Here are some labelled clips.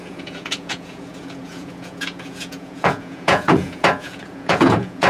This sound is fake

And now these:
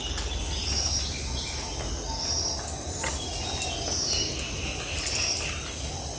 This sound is real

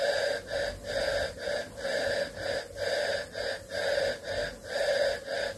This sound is real